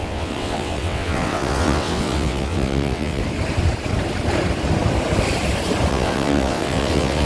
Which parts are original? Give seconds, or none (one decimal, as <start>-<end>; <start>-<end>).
3.2-5.9